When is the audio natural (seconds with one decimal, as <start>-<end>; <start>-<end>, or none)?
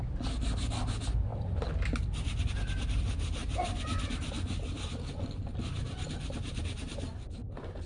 0.0-7.9